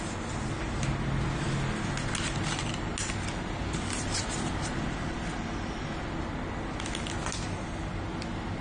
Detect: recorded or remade recorded